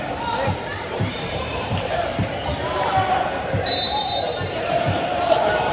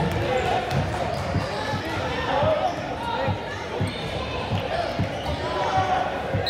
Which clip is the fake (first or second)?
first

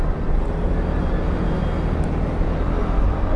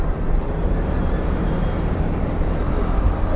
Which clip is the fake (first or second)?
second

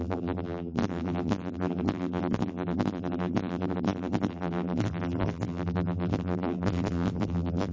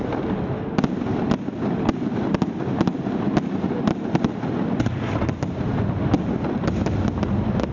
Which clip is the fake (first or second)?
first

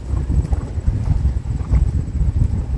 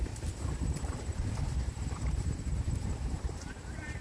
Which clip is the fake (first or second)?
second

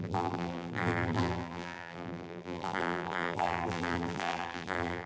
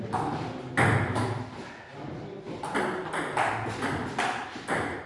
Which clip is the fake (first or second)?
first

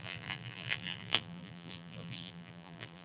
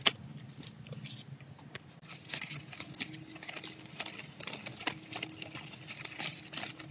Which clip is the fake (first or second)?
first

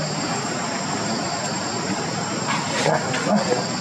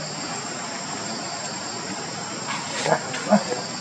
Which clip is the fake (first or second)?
first